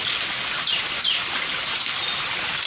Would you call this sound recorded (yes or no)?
yes